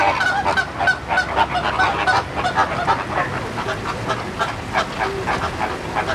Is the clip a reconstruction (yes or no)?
no